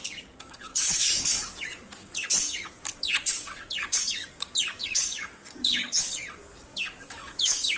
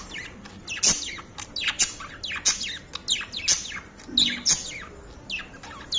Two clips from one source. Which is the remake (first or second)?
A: first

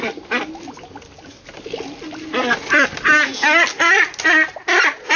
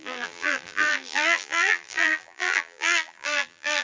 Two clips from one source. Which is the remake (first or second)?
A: second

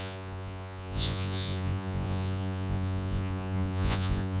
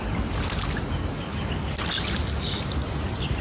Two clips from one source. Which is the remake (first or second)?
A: first